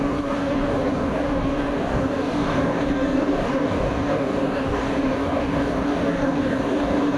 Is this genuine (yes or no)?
no